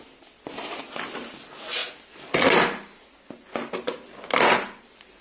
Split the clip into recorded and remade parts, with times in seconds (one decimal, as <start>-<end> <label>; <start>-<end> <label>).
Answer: 0.0-5.2 recorded